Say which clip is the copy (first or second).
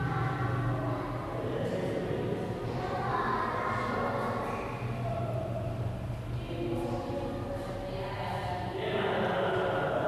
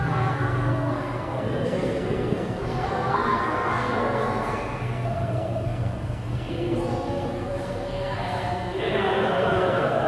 second